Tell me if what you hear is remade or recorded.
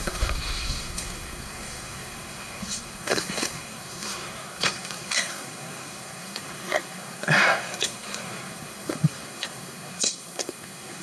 remade